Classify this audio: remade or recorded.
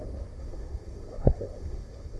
remade